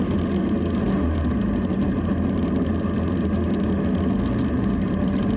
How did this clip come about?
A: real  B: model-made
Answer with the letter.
A